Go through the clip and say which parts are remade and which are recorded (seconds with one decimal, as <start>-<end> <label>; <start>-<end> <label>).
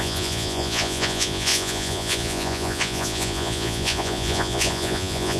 0.0-5.4 remade